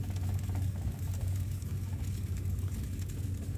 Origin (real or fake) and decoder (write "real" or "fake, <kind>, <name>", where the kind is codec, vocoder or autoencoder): fake, codec, DAC